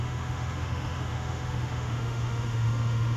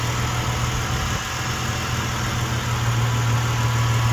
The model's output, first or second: first